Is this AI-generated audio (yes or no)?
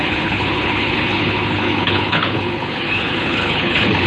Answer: yes